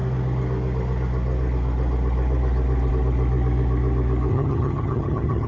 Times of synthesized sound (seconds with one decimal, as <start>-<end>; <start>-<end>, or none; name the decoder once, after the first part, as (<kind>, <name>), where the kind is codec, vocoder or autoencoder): 4.3-5.5 (vocoder, HiFi-GAN)